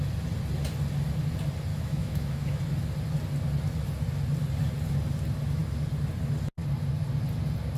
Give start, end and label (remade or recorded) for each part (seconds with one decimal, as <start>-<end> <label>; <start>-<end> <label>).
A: 0.0-1.7 recorded; 1.7-2.6 remade; 2.6-7.8 recorded